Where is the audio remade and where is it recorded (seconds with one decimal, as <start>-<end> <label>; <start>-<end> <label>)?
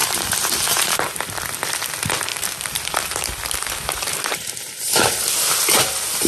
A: 0.0-1.1 remade; 1.1-2.3 recorded; 2.3-6.3 remade